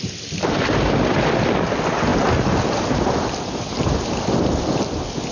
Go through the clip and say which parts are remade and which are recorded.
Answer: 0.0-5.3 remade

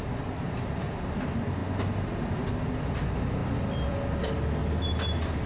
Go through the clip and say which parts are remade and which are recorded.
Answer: 0.0-5.5 recorded

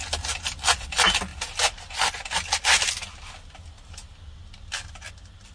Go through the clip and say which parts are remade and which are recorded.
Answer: 0.0-5.5 recorded